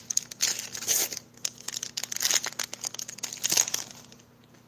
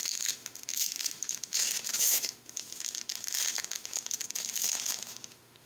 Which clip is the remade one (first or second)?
second